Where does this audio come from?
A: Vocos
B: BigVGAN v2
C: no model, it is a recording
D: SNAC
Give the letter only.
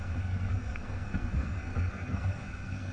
D